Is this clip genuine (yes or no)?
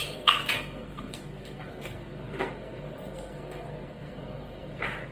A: no